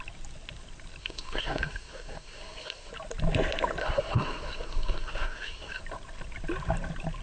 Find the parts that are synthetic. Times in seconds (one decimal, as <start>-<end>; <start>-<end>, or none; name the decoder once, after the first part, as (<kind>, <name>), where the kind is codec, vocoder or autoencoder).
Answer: 1.0-2.9 (codec, SNAC); 3.8-5.8